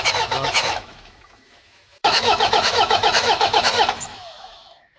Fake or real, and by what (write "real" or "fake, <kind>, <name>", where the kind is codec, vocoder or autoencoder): fake, autoencoder, DAC-VAE